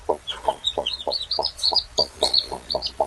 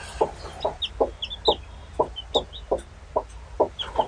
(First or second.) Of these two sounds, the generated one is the first